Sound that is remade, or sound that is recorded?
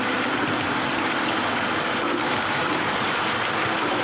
recorded